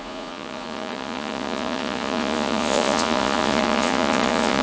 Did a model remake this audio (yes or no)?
yes